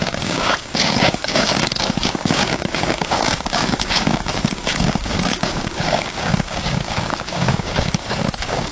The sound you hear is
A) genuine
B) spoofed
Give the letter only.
B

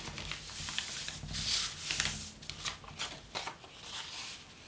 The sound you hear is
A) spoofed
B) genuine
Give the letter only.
B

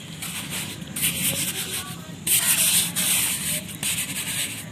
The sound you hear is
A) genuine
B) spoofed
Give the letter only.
A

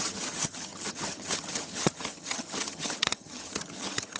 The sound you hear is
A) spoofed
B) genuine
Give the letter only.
A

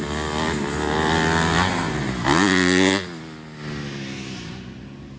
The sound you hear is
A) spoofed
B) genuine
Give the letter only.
B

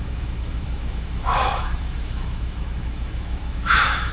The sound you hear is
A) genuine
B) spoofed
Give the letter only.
B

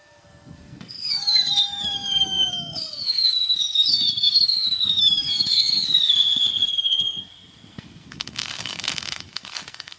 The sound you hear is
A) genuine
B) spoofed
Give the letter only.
B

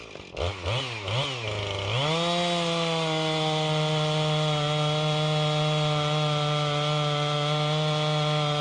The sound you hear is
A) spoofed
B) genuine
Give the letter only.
B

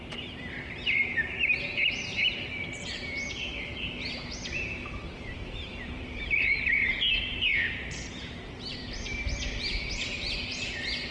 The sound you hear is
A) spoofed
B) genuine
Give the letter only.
A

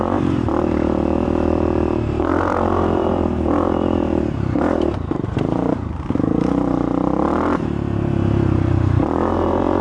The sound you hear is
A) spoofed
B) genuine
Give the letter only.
A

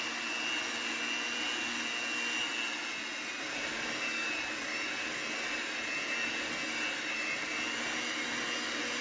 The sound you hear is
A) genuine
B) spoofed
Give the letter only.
A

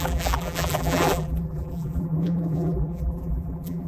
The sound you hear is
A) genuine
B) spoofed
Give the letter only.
B